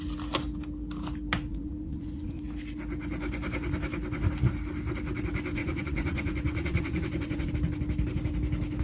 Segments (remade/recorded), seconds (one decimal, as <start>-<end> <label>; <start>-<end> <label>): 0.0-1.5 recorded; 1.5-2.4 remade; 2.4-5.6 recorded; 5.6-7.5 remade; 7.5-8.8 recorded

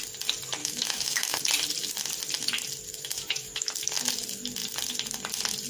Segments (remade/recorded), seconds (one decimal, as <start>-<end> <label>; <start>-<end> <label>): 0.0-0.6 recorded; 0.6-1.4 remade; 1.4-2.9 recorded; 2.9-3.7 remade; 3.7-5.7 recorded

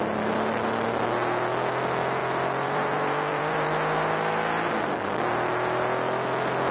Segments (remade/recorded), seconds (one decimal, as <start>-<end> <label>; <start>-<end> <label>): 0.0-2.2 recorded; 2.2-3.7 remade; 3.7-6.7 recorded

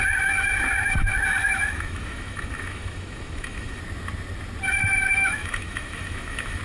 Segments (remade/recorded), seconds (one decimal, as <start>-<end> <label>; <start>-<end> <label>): 0.0-1.4 recorded; 1.4-3.8 remade; 3.8-4.8 recorded; 4.8-6.6 remade

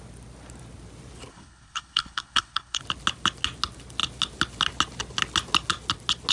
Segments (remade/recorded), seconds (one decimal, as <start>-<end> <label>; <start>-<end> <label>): 0.0-1.3 recorded; 1.3-2.8 remade; 2.8-6.3 recorded